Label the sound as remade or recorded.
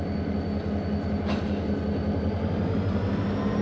recorded